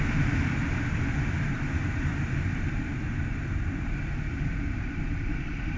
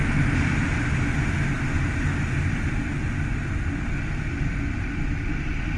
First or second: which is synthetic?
first